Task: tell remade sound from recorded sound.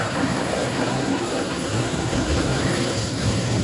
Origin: remade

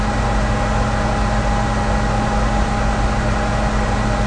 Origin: recorded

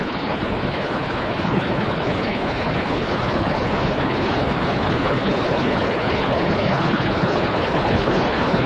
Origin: remade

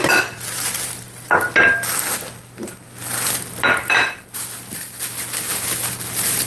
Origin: recorded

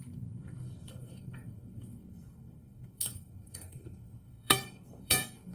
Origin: remade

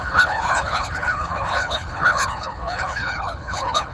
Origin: remade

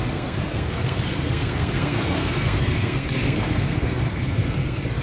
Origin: remade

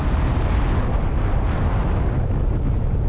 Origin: recorded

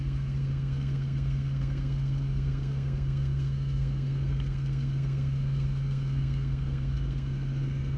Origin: remade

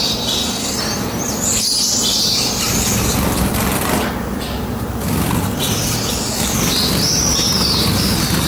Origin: recorded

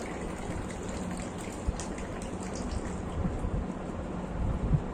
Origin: recorded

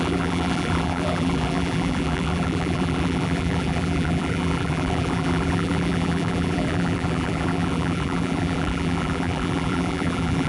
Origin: remade